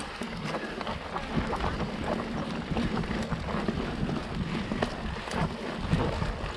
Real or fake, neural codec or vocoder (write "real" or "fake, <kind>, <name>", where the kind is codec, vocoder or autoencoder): real